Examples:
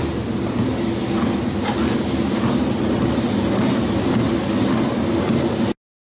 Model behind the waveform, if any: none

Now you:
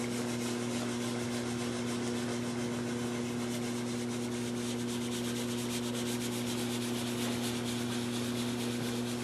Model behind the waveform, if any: none